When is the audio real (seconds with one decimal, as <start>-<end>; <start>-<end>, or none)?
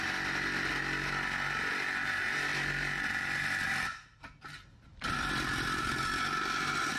0.0-2.5; 3.4-4.9; 5.8-7.0